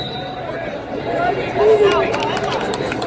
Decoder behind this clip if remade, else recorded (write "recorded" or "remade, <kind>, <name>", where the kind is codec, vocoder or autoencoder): remade, vocoder, BigVGAN v2